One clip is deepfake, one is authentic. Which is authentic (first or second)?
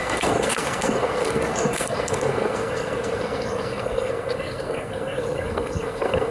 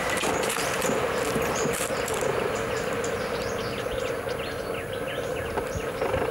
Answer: second